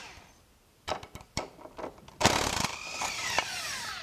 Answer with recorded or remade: remade